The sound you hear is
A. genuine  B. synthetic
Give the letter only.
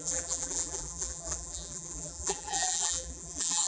B